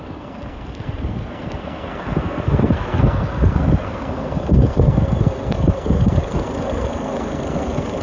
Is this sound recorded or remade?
remade